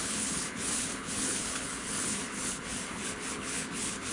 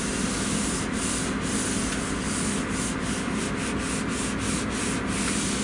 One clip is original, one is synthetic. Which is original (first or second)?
second